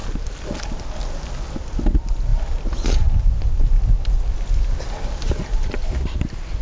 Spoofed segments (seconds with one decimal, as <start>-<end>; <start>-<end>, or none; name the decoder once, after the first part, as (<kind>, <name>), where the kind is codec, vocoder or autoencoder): none